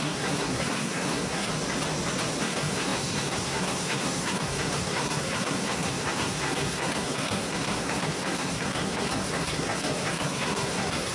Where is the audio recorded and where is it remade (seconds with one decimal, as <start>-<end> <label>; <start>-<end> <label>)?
0.0-1.5 remade; 1.5-2.4 recorded; 2.4-11.1 remade